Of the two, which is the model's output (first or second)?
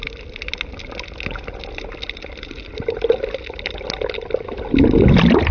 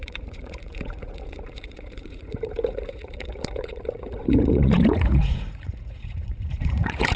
second